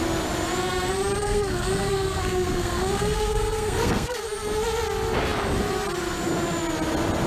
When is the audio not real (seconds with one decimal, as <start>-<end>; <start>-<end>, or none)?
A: 1.2-4.2